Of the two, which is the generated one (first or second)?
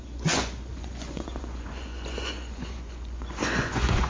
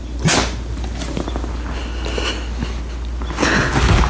first